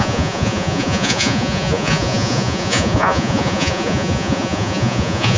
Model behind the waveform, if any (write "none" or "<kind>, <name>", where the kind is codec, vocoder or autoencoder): vocoder, Vocos